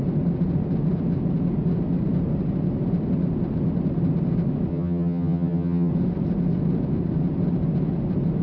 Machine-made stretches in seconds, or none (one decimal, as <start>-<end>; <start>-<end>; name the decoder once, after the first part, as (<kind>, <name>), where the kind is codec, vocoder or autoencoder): 4.7-5.9 (vocoder, HiFi-GAN)